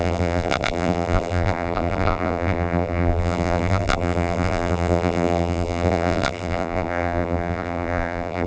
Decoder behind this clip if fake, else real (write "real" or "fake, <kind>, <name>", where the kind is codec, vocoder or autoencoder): fake, vocoder, BigVGAN v2